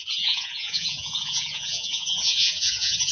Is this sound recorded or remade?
remade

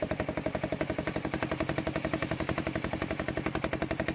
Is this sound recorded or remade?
recorded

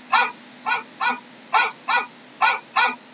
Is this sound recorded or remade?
recorded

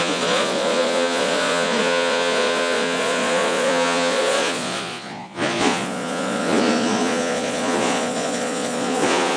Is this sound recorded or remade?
remade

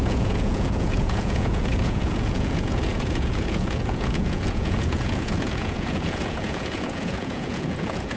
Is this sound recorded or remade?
remade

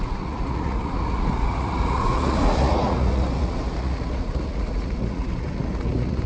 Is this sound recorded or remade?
remade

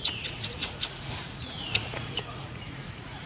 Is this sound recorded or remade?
remade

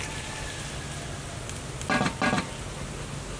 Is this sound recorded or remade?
recorded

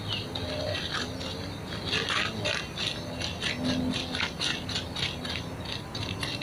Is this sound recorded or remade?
recorded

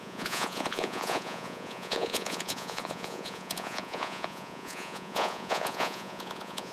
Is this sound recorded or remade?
remade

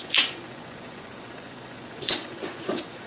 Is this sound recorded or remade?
remade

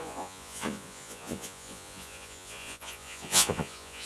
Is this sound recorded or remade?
remade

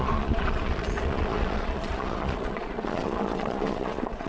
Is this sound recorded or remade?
remade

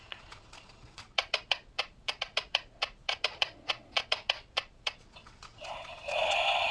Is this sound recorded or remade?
remade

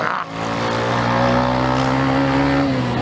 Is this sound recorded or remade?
recorded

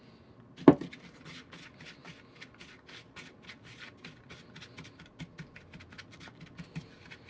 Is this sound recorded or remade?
recorded